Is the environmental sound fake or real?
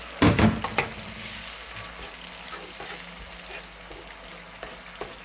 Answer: real